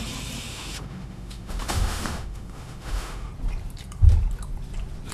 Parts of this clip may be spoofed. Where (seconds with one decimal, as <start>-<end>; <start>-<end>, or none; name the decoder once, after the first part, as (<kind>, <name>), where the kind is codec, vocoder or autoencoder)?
0.5-3.3 (autoencoder, DAC-VAE)